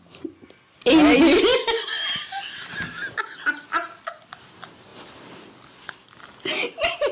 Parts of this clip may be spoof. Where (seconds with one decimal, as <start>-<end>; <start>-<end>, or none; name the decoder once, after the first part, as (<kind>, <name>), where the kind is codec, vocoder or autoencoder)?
none